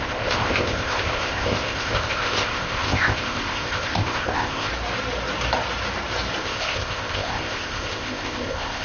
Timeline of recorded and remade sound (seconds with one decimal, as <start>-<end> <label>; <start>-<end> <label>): 0.0-4.7 remade; 4.7-6.4 recorded; 6.4-8.8 remade